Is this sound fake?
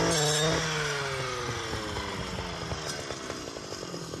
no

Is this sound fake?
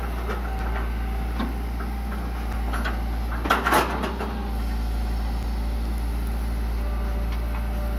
no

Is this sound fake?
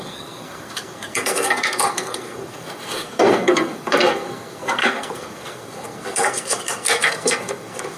yes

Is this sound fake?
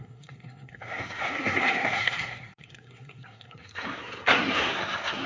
yes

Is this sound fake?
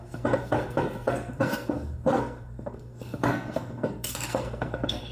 yes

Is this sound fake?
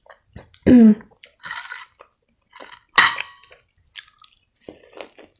no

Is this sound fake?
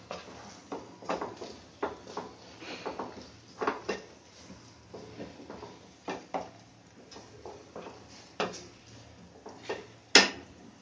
no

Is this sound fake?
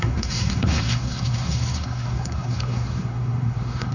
yes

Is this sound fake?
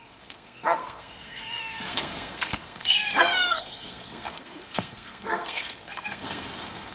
yes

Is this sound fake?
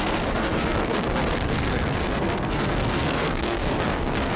yes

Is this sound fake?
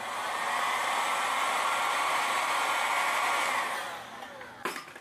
no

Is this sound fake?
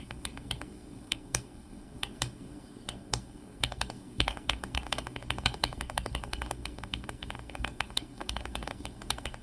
yes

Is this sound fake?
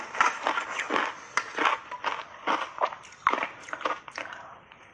no